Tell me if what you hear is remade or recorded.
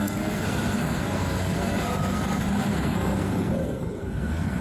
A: remade